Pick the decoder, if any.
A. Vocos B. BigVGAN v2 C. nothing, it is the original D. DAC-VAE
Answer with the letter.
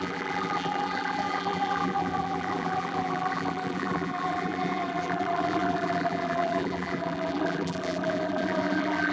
B